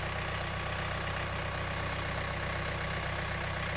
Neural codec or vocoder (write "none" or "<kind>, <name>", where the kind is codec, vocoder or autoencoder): none